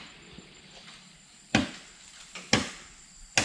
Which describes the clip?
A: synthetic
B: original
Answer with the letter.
B